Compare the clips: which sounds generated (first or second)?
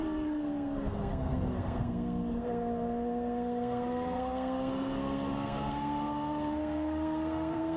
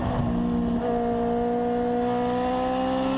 first